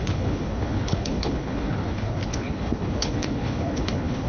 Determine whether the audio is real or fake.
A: fake